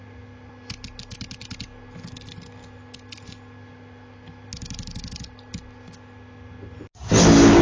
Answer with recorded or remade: recorded